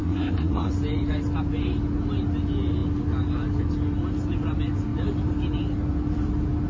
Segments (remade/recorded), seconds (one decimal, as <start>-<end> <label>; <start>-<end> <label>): 0.0-0.7 remade; 0.7-6.7 recorded